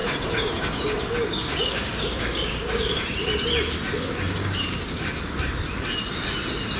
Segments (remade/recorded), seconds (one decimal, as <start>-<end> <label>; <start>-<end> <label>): 0.0-3.0 remade; 3.0-4.4 recorded; 4.4-5.2 remade; 5.2-6.8 recorded